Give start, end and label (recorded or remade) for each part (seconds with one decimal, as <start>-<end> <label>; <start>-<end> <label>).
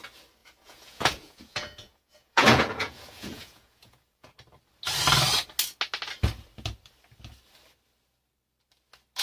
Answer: 0.0-0.4 recorded; 0.4-4.3 remade; 4.3-9.2 recorded